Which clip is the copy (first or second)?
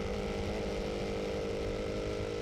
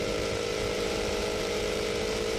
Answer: second